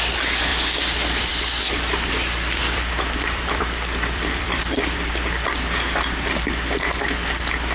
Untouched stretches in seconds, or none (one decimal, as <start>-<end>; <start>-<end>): 0.0-0.5; 5.1-7.7

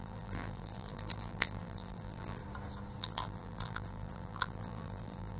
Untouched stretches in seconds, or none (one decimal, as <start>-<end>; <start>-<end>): 2.4-3.0

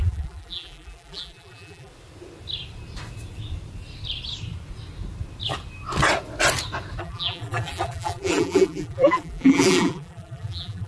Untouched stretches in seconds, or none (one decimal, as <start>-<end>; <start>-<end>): 1.9-7.0

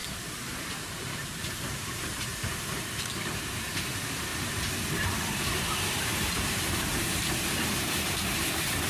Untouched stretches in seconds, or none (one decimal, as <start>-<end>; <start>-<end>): 2.3-3.1; 4.3-5.4

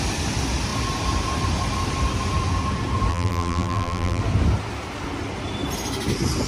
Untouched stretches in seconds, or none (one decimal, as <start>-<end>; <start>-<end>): 0.0-3.1; 4.2-6.5

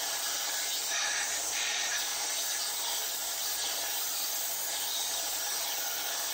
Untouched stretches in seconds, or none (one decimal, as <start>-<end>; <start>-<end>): 2.1-6.3

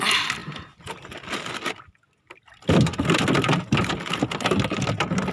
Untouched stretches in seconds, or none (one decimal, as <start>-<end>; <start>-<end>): 0.0-5.3